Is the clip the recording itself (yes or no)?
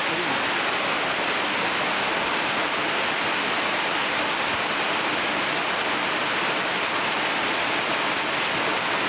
yes